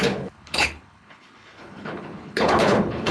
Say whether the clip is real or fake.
fake